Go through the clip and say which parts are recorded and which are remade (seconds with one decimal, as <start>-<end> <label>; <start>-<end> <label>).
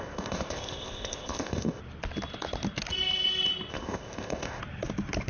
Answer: 0.0-1.8 remade; 1.8-3.7 recorded; 3.7-4.6 remade; 4.6-5.3 recorded